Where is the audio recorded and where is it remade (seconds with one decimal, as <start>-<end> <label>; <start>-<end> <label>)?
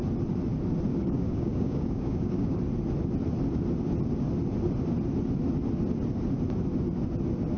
0.0-0.9 recorded; 0.9-2.6 remade; 2.6-7.6 recorded